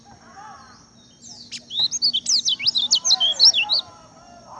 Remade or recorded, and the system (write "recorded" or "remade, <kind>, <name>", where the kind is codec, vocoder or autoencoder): recorded